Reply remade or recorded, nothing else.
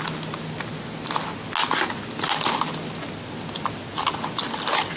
recorded